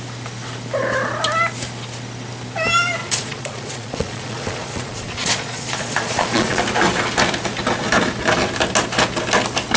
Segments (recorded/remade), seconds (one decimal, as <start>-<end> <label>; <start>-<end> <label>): 0.0-3.0 recorded; 3.0-6.6 remade; 6.6-9.8 recorded